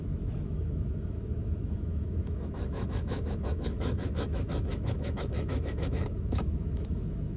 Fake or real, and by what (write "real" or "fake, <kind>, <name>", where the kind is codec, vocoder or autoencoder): fake, autoencoder, DAC-VAE